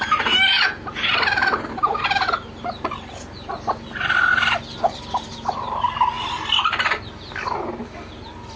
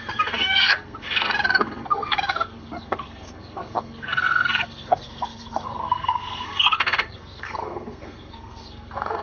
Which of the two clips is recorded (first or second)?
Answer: first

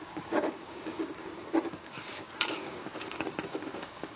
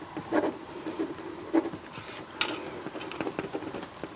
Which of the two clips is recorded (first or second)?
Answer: second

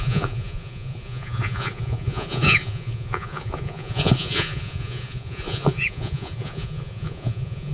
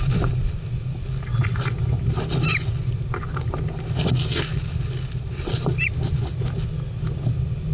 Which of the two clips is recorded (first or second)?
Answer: second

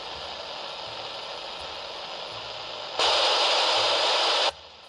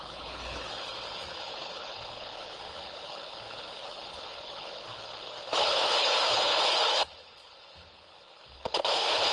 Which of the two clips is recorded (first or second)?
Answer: first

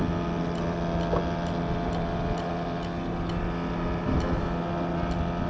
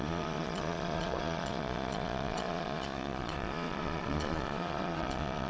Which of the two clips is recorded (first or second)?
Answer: first